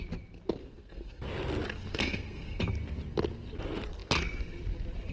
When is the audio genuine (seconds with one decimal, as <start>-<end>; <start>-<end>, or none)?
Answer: 0.0-0.6; 1.2-1.9; 2.6-5.1